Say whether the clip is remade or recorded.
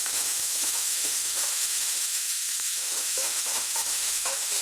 remade